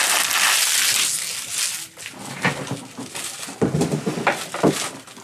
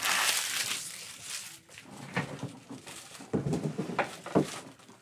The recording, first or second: first